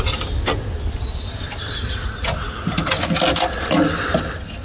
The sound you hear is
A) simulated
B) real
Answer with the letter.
B